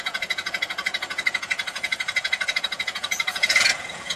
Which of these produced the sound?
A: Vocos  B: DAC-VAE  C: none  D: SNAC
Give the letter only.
A